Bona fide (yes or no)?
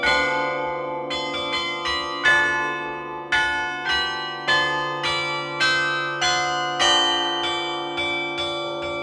yes